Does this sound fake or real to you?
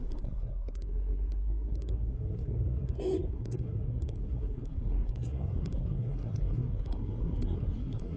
fake